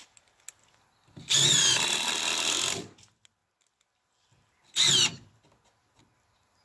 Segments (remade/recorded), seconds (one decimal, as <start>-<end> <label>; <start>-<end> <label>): 0.0-6.6 recorded